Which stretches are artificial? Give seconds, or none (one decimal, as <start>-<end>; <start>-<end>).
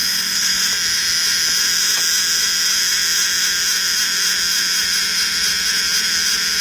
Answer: 0.0-0.6